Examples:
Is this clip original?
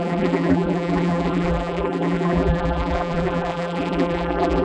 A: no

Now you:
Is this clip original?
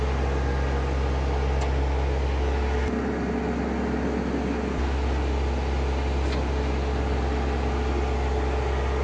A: yes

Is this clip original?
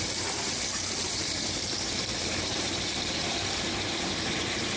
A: no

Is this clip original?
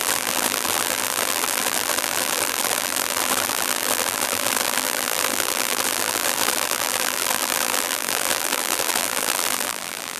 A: no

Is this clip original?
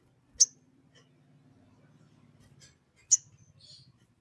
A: yes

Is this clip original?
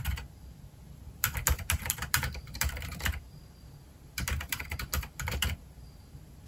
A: no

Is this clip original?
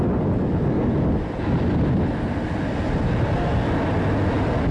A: yes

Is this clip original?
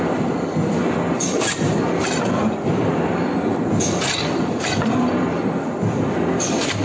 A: no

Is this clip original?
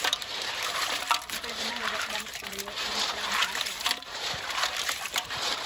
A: no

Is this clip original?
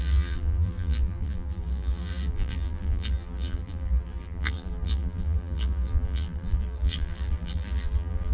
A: no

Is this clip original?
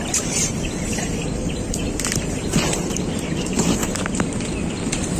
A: no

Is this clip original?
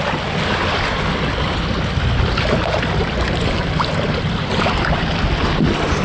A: yes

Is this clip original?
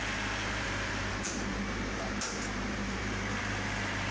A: no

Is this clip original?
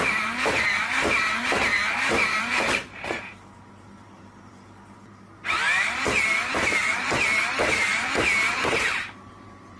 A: no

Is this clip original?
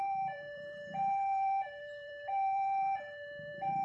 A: no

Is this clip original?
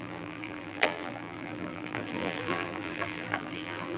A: no